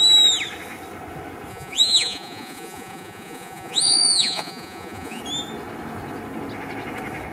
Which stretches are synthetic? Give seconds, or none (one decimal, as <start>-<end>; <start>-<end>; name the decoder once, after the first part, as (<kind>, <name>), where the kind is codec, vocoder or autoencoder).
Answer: 1.5-5.2 (vocoder, Vocos)